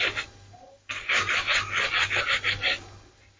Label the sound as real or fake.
real